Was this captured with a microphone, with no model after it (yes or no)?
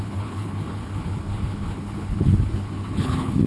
no